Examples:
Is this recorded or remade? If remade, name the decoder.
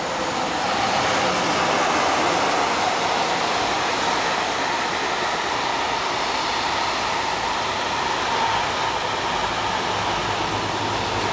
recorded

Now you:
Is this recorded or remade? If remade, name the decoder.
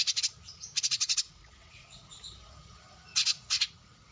remade, vocoder, Vocos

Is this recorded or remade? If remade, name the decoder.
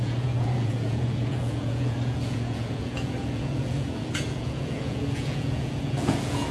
remade, vocoder, Vocos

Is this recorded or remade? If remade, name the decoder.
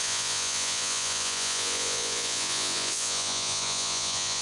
remade, vocoder, Vocos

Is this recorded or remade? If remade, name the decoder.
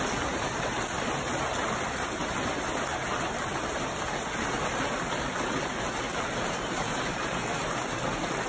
recorded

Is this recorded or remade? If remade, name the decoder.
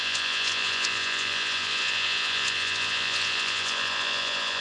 remade, vocoder, Vocos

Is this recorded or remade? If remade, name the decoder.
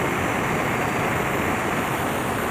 recorded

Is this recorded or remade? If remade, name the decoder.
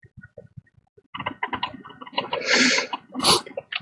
recorded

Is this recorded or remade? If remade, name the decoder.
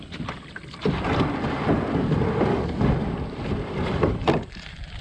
recorded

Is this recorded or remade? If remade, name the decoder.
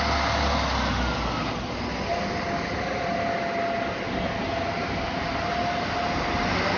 recorded